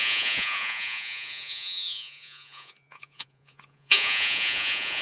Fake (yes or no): yes